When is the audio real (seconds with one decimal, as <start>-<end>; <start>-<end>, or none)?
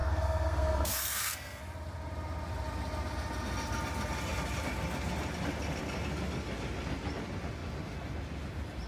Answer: 1.6-8.9